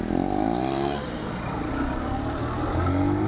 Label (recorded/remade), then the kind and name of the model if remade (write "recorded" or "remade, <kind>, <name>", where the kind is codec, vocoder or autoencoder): recorded